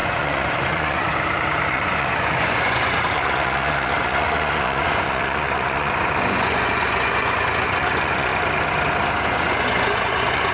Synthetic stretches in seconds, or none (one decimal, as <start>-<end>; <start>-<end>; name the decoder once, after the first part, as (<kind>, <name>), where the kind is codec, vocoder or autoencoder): 0.0-1.1 (vocoder, Vocos); 1.7-8.3; 9.2-10.5